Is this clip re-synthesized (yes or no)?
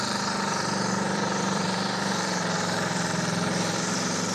yes